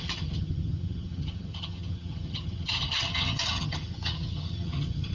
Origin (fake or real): fake